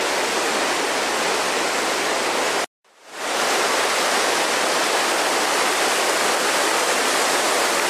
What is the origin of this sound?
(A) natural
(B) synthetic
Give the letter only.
A